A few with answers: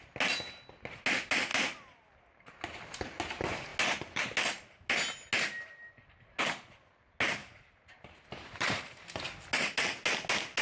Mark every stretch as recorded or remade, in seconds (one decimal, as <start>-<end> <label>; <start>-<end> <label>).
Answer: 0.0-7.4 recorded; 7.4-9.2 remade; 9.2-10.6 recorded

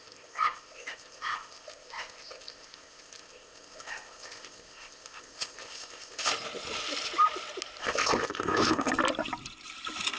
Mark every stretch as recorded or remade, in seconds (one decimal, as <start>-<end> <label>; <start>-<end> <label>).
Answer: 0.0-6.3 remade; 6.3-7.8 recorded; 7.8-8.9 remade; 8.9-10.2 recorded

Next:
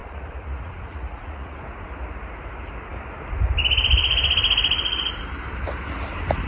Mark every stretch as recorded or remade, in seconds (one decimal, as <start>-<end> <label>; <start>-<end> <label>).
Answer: 0.0-1.6 remade; 1.6-6.5 recorded

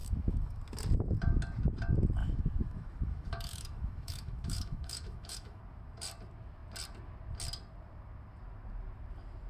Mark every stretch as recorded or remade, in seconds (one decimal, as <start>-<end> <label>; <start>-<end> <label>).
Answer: 0.0-0.6 remade; 0.6-2.2 recorded; 2.2-5.6 remade; 5.6-9.5 recorded

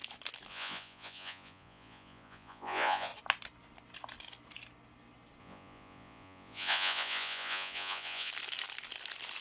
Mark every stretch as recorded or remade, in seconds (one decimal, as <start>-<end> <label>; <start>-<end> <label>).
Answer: 0.0-0.5 recorded; 0.5-3.1 remade; 3.1-5.4 recorded; 5.4-8.3 remade; 8.3-9.4 recorded